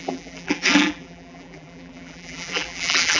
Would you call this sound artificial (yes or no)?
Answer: yes